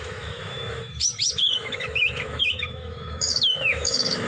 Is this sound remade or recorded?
remade